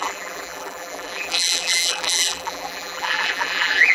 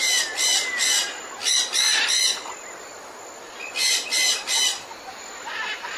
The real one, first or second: second